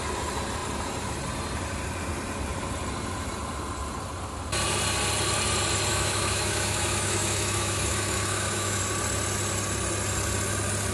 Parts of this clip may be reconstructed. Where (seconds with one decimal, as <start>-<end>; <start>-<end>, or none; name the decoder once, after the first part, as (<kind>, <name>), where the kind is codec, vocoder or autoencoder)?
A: 5.9-8.8 (autoencoder, DAC-VAE)